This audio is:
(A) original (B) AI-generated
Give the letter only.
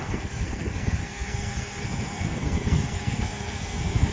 B